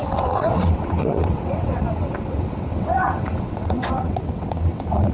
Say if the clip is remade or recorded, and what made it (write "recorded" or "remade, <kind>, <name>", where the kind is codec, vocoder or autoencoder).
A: remade, vocoder, WaveNeXt